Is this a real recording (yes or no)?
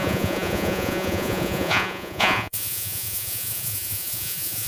no